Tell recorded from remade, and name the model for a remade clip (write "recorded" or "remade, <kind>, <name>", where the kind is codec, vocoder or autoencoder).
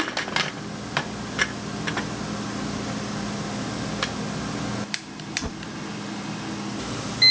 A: recorded